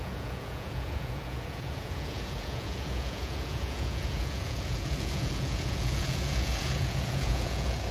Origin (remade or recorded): remade